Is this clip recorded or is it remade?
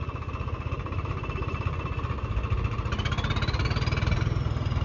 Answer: recorded